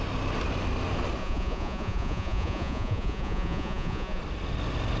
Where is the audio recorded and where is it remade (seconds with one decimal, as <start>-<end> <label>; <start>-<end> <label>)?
0.0-1.2 recorded; 1.2-4.2 remade; 4.2-5.0 recorded